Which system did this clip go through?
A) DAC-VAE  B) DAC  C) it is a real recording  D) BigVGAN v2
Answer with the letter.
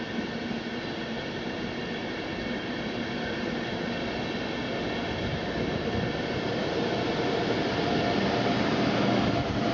C